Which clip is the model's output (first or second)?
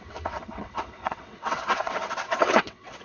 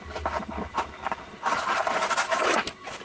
first